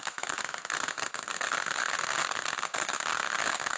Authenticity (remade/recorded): remade